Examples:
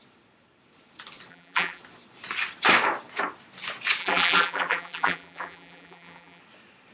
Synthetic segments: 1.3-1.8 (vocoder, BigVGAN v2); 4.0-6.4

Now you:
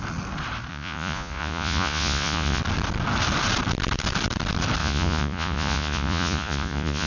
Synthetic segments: 0.7-2.6 (vocoder, Vocos); 4.8-7.1

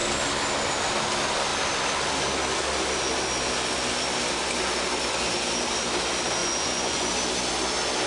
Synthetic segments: 6.4-7.1 (vocoder, Vocos)

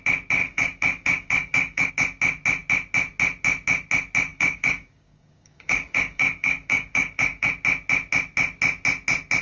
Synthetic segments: 0.4-1.9 (codec, DAC); 4.3-7.5

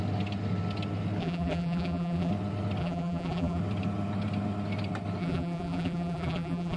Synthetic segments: 1.2-2.3 (vocoder, BigVGAN v2); 2.8-3.6; 5.2-6.8

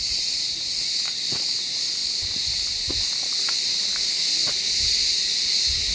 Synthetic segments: none

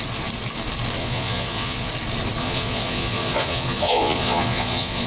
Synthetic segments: 1.0-1.9 (vocoder, Vocos); 2.4-5.1

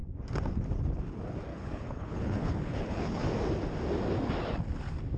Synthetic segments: 1.5-3.2 (codec, HILCodec)